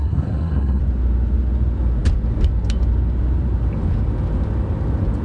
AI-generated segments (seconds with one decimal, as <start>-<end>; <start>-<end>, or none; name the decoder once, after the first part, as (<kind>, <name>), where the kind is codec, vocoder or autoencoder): 0.0-0.8 (codec, SNAC)